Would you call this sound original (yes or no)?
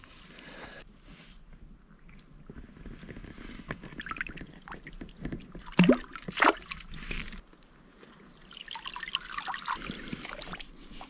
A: yes